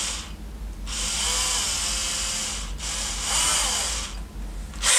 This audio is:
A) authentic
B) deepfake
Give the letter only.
A